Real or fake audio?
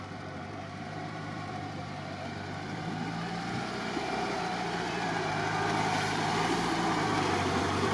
fake